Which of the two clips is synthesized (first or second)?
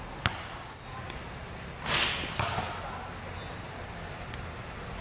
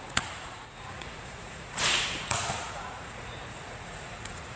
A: second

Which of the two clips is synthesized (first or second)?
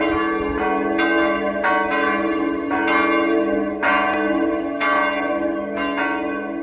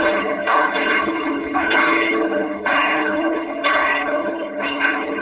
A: second